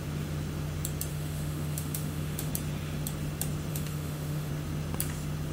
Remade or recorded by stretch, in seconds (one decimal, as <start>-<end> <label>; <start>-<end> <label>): 0.0-1.1 recorded; 1.1-2.5 remade; 2.5-3.7 recorded; 3.7-4.5 remade; 4.5-5.5 recorded

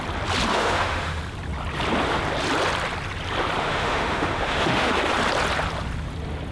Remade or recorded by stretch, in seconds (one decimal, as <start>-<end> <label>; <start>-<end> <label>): 0.0-0.5 recorded; 0.5-1.2 remade; 1.2-3.6 recorded; 3.6-4.9 remade; 4.9-6.5 recorded

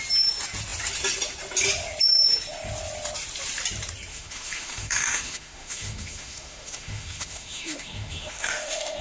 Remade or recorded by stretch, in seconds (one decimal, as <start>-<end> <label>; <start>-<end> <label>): 0.0-4.1 recorded; 4.1-9.0 remade

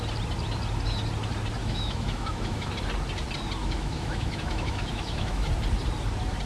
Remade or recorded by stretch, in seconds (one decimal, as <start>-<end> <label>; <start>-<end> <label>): 0.0-1.6 recorded; 1.6-2.7 remade; 2.7-3.6 recorded; 3.6-5.5 remade; 5.5-6.5 recorded